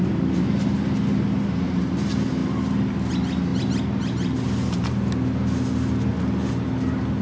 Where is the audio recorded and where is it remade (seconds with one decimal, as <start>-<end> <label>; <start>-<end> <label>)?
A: 0.0-7.2 recorded